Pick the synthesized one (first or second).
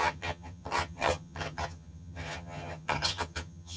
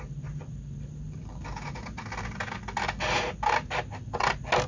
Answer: first